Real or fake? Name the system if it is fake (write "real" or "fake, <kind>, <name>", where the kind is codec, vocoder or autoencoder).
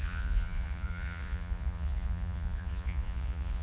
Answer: fake, vocoder, Vocos